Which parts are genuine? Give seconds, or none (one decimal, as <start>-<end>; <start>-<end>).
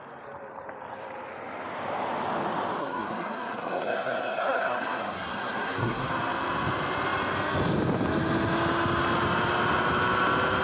0.0-2.8; 6.1-10.6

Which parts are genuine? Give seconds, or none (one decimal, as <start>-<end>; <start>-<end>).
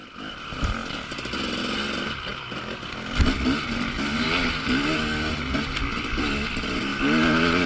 0.0-7.7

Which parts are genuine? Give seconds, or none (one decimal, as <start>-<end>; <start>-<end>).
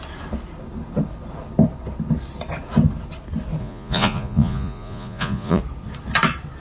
0.0-3.6; 5.6-6.6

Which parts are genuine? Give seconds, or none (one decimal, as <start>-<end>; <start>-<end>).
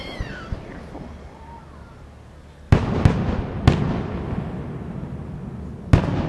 0.0-6.3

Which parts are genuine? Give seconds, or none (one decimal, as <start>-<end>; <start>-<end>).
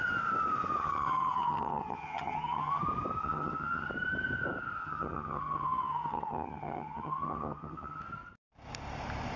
0.0-0.8; 2.8-3.2; 3.9-4.8; 8.0-9.4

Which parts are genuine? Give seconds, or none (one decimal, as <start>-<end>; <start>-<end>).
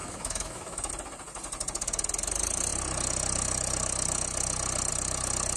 0.9-5.6